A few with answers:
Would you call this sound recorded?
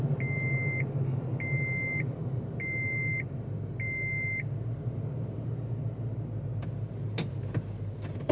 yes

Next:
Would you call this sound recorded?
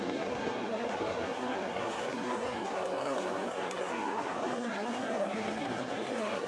no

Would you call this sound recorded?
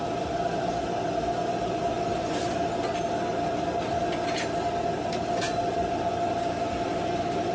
yes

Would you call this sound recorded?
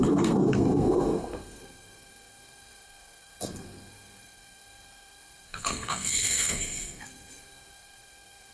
no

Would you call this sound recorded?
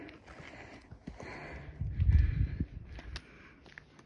yes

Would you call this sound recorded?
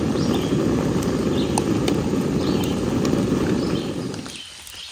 yes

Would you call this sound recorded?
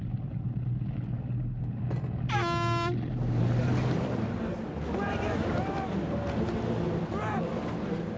yes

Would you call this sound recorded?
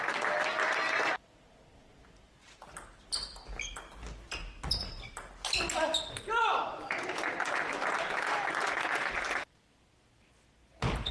yes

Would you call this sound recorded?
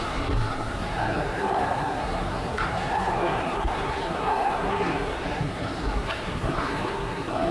no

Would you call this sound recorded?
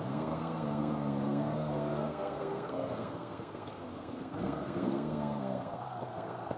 no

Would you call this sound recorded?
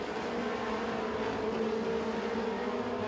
yes